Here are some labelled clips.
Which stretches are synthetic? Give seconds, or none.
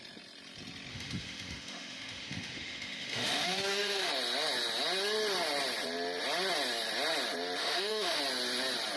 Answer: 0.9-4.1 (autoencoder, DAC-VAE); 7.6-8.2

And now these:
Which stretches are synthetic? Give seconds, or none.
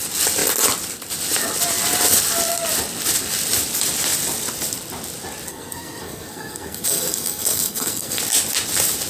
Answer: 5.5-8.2 (codec, SNAC)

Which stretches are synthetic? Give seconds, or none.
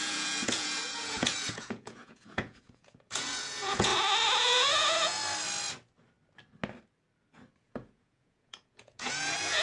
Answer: 0.0-3.9 (vocoder, Vocos); 4.4-5.2; 7.6-9.6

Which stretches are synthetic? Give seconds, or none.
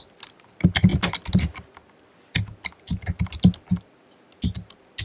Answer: none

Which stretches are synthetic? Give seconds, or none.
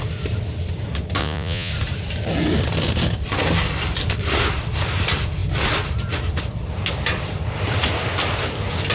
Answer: 1.2-1.7 (vocoder, Vocos)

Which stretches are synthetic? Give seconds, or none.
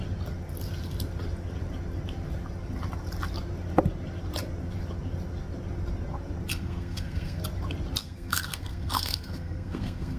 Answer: 6.5-7.4 (codec, SNAC); 8.0-10.2